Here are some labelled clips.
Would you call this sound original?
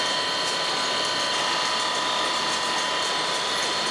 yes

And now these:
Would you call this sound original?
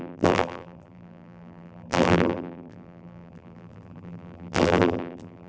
no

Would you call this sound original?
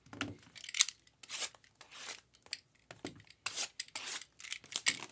yes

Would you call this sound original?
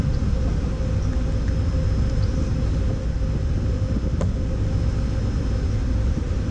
yes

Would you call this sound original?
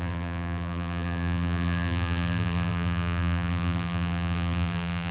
no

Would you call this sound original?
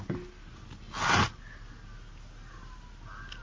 yes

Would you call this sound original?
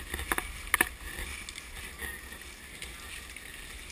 yes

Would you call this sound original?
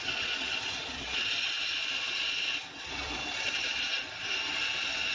yes